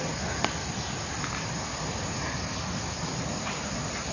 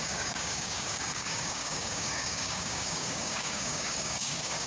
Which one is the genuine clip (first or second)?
first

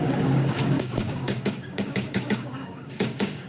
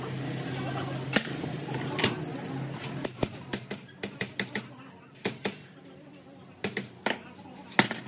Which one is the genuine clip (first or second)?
second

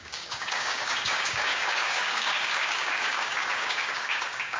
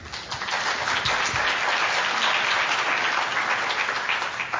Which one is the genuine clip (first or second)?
second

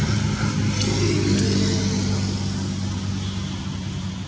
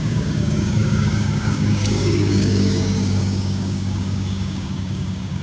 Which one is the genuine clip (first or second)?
first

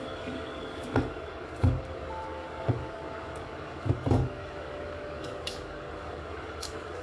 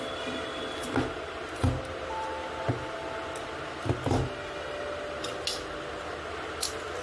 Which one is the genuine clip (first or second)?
second